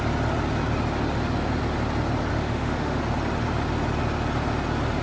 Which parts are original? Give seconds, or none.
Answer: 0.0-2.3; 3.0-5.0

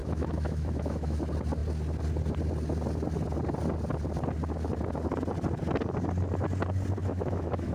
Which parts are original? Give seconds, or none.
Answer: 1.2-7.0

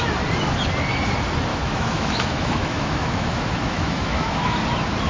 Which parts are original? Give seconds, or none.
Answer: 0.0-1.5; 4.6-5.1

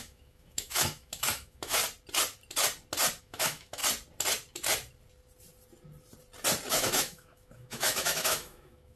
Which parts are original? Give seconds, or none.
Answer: 1.8-3.2; 3.8-6.7